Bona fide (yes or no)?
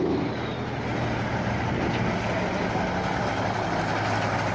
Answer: yes